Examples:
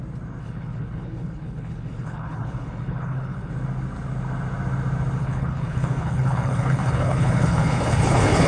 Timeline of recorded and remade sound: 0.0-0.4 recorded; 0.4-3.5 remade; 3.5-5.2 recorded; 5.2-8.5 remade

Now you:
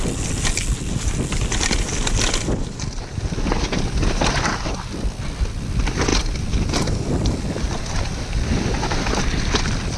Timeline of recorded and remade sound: 0.0-10.0 recorded

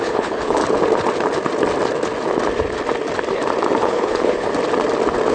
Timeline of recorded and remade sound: 0.0-0.6 remade; 0.6-3.8 recorded; 3.8-4.5 remade; 4.5-5.3 recorded

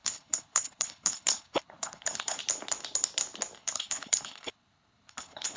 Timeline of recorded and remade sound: 0.0-2.4 remade; 2.4-3.6 recorded; 3.6-5.6 remade

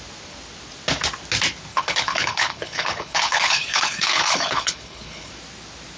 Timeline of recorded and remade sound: 0.0-1.7 recorded; 1.7-5.3 remade; 5.3-6.0 recorded

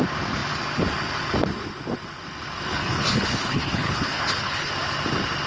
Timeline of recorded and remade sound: 0.0-2.7 recorded; 2.7-4.7 remade; 4.7-5.5 recorded

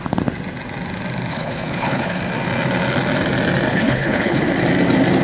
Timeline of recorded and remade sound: 0.0-1.3 recorded; 1.3-2.2 remade; 2.2-3.7 recorded; 3.7-4.4 remade; 4.4-5.2 recorded

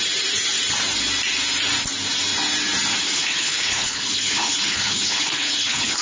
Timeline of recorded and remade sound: 0.0-3.0 recorded; 3.0-6.0 remade